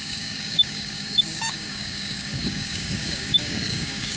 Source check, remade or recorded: remade